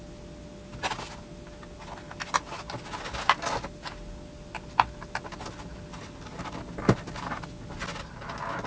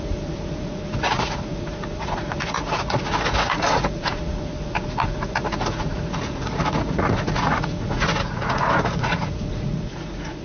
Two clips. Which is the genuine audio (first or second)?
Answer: first